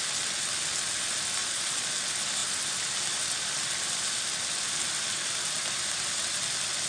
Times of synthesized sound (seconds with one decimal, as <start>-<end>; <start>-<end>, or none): 1.4-1.9